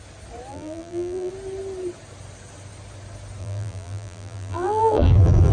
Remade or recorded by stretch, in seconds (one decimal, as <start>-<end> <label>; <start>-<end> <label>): 0.0-0.5 recorded; 0.5-1.3 remade; 1.3-3.4 recorded; 3.4-5.5 remade